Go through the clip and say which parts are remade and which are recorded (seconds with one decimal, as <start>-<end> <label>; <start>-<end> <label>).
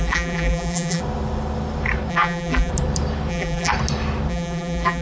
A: 0.0-1.0 remade; 1.0-2.1 recorded; 2.1-2.7 remade; 2.7-3.3 recorded; 3.3-3.7 remade; 3.7-4.3 recorded; 4.3-5.0 remade